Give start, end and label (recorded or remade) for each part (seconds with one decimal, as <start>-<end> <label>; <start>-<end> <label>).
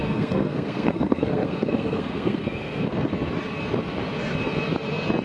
0.0-3.1 remade; 3.1-5.2 recorded